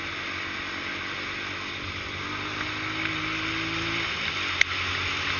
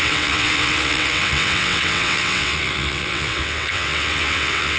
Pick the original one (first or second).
first